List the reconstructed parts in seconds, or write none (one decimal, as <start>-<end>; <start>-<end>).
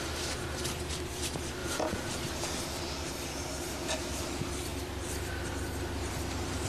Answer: 1.6-2.2